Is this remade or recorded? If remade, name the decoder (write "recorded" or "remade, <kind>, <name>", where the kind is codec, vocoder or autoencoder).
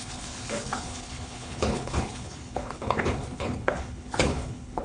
remade, codec, HILCodec